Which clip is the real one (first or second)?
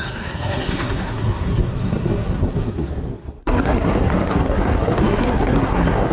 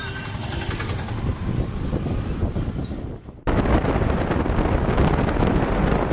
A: second